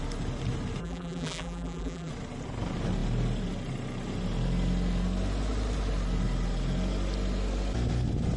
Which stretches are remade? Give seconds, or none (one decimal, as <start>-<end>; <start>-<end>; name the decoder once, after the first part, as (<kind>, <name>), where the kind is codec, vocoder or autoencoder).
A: 0.8-2.1 (vocoder, BigVGAN v2)